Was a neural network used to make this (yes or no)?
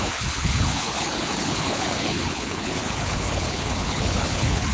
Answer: yes